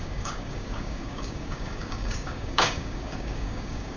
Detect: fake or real fake